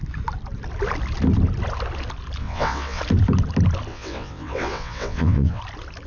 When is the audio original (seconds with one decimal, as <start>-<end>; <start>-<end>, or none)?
0.0-2.4; 3.0-3.9; 5.6-6.1